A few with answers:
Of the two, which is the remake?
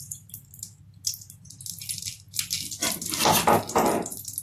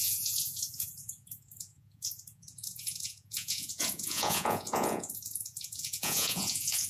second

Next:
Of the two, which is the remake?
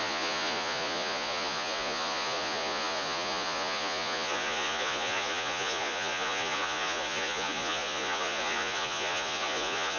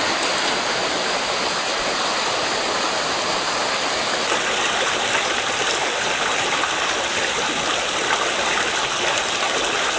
first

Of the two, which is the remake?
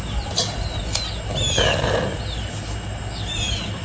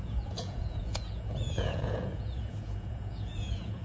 second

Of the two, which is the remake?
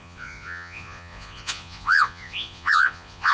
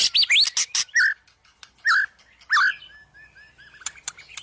first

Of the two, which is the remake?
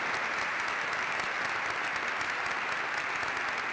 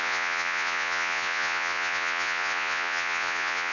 second